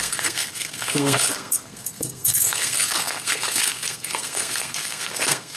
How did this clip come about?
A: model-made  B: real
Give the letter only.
A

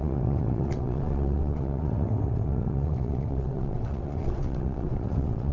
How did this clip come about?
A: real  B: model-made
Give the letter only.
B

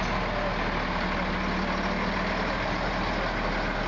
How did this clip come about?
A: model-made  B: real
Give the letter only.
B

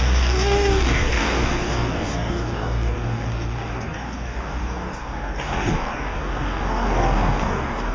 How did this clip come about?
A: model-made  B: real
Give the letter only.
A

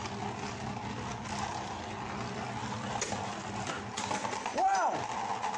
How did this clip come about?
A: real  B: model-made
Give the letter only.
A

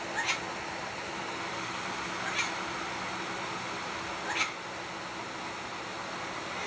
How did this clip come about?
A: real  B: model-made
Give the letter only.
A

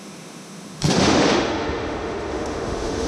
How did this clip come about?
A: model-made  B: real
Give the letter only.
A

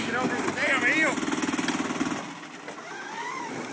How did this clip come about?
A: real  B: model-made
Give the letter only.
A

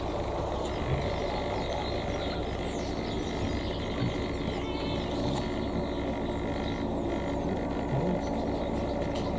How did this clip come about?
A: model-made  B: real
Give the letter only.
B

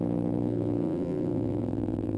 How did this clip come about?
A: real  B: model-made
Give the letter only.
B